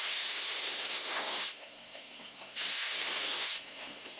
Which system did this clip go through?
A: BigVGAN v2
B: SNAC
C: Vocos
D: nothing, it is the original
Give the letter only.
B